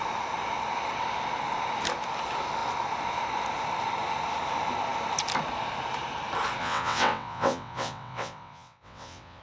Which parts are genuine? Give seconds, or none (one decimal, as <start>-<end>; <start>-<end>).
0.0-6.6